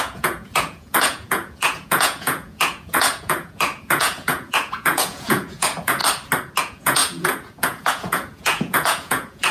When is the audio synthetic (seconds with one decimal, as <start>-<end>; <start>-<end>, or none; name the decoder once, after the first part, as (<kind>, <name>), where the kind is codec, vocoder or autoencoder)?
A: 0.0-6.0 (vocoder, Vocos); 6.6-9.5